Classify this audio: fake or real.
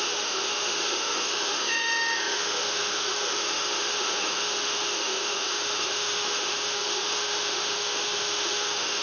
fake